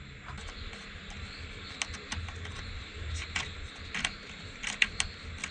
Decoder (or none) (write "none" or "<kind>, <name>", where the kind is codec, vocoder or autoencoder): none